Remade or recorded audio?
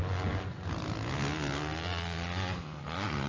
recorded